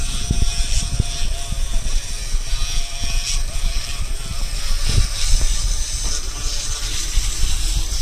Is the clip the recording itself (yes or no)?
no